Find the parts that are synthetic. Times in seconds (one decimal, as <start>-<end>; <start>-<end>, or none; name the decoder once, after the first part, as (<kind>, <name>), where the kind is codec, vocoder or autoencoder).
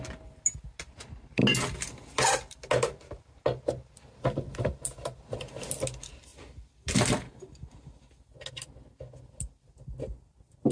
none